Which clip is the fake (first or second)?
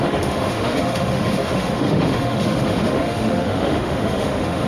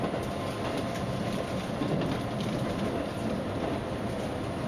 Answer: first